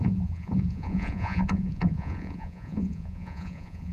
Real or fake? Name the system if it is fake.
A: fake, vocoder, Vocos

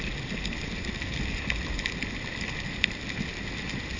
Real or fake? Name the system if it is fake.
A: real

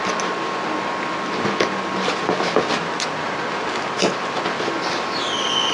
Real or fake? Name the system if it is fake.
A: real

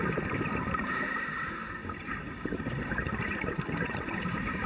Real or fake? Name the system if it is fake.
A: fake, vocoder, BigVGAN v2